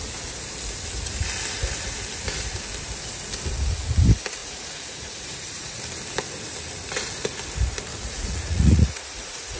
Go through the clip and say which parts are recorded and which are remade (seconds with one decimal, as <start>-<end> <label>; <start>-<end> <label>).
0.0-4.4 recorded; 4.4-5.8 remade; 5.8-7.9 recorded; 7.9-9.6 remade